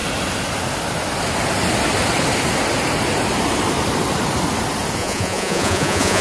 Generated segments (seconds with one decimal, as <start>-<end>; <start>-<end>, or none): 5.0-6.2